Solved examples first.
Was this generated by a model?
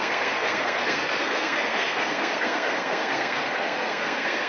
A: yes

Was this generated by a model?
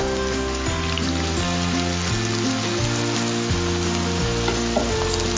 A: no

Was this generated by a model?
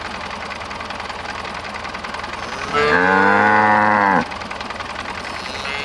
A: no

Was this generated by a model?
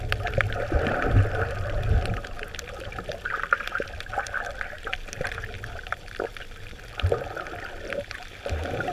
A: no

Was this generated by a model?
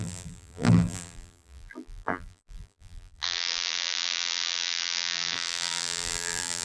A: yes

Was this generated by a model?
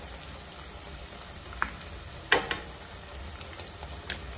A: no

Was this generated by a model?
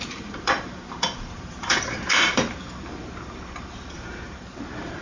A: yes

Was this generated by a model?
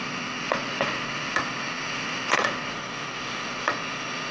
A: yes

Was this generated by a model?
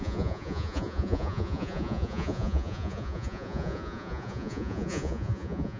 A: yes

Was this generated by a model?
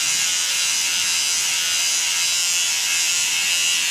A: yes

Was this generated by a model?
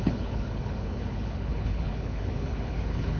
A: yes